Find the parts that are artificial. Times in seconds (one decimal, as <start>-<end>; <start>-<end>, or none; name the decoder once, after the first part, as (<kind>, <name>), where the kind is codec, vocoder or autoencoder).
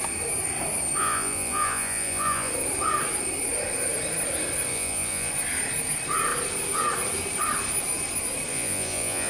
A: 1.0-2.5 (vocoder, Vocos); 4.7-5.3; 8.5-9.3